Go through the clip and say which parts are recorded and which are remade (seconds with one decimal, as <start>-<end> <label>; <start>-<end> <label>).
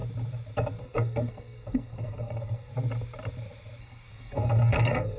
0.0-0.8 recorded; 0.8-2.7 remade; 2.7-3.8 recorded; 3.8-5.2 remade